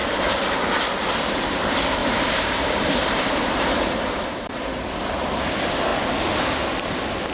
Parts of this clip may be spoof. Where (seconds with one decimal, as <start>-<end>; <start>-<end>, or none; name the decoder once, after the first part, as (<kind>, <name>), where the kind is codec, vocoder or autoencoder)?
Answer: 2.0-5.4 (vocoder, BigVGAN v2)